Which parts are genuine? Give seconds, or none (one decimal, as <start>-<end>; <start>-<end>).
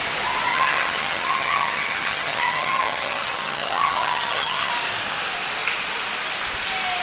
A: 0.0-0.5; 4.7-7.0